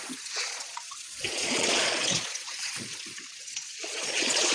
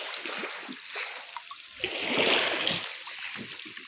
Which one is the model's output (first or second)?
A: first